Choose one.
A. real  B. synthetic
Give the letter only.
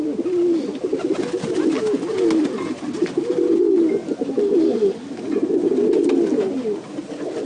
A